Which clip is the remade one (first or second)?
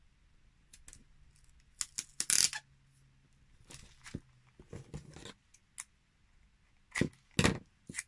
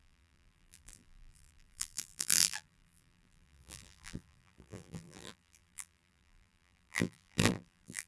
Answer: second